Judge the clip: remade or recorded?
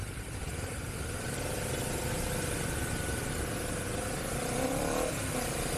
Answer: remade